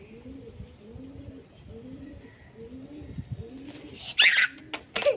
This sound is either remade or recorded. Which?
recorded